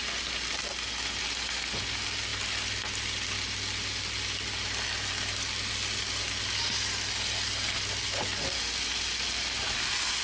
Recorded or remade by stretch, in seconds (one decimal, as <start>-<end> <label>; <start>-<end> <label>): 0.0-10.2 recorded